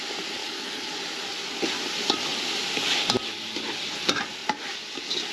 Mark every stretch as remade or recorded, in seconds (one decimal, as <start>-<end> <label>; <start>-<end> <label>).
0.0-0.4 recorded; 0.4-1.0 remade; 1.0-5.3 recorded